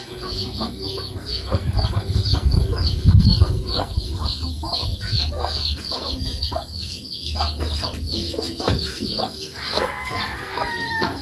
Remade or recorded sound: remade